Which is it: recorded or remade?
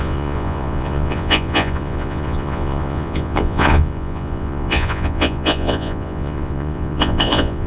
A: remade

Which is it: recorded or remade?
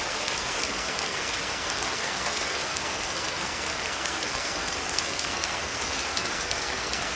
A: remade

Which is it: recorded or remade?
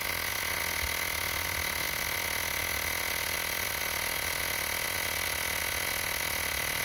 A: recorded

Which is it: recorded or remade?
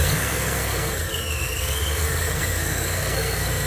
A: remade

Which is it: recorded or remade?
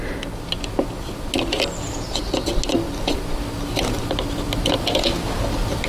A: recorded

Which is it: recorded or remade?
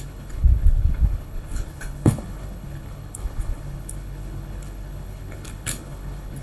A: remade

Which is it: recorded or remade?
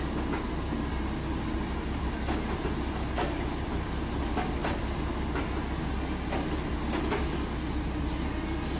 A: recorded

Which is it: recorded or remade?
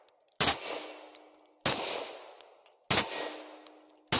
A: recorded